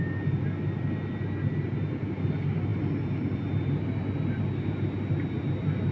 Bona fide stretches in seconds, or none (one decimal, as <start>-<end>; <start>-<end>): 0.0-5.9

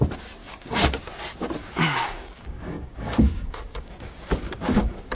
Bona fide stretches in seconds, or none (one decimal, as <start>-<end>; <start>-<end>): 0.0-0.4; 1.0-1.6

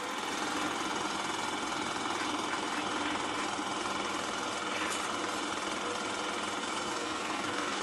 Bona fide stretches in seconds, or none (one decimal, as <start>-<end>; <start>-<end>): 0.0-6.6

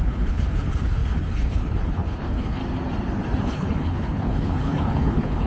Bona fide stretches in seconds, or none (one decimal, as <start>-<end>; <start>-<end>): 2.6-3.4

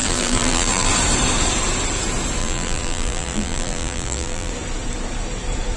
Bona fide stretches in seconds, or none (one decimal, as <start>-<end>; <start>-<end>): 0.9-2.4; 4.5-5.8

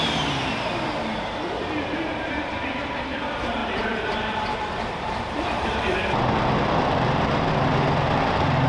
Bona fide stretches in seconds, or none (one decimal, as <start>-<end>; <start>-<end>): none